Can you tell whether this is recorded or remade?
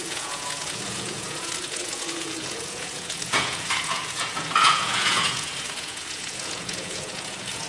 remade